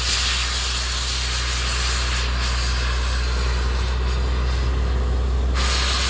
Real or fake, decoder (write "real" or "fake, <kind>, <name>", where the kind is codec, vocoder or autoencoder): real